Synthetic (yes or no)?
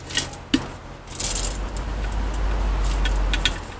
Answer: no